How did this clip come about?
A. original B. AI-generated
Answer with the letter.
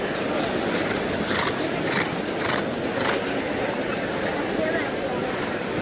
A